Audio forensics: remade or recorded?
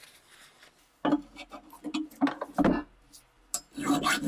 recorded